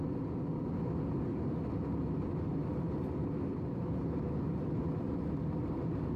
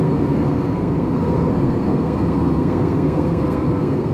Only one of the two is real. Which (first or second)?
first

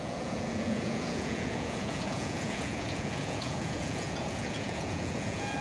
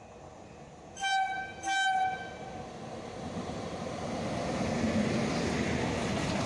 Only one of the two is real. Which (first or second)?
second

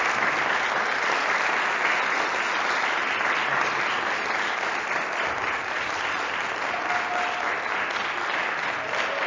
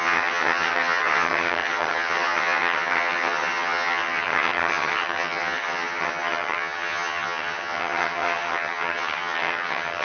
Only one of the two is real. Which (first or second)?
first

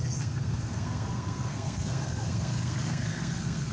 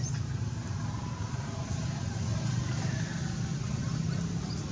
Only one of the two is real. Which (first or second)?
second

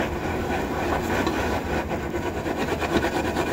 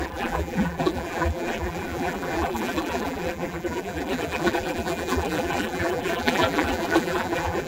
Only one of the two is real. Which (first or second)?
first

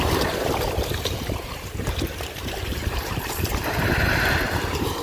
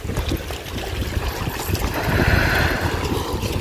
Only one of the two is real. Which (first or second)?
second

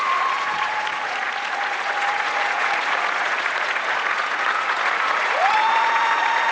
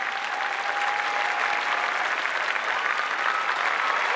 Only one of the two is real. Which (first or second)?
second